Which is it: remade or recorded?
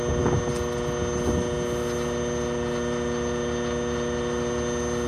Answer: recorded